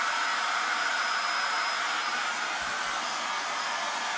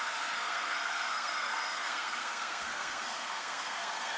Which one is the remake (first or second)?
second